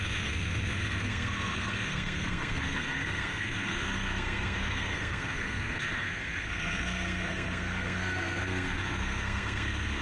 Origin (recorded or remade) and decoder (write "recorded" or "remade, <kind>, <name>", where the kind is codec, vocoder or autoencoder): remade, codec, SNAC